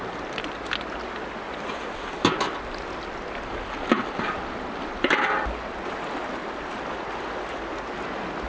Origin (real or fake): real